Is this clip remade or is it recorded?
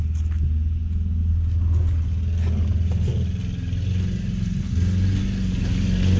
recorded